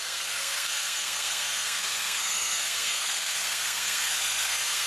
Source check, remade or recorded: remade